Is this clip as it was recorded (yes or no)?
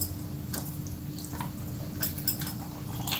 yes